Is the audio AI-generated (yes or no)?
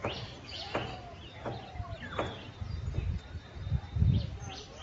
no